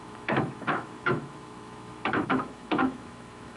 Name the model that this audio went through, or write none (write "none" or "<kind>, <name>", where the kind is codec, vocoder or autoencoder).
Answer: autoencoder, DAC-VAE